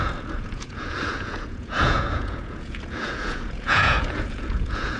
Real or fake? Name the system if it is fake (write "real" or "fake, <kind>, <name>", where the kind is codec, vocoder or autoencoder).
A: fake, vocoder, Vocos